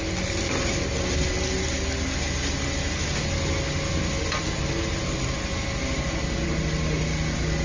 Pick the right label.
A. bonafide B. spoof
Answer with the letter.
A